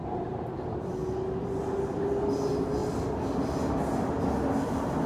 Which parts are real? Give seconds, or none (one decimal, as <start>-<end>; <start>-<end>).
0.8-5.1